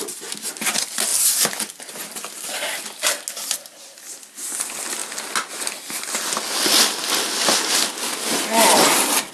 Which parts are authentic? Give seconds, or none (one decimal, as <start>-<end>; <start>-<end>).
0.0-9.3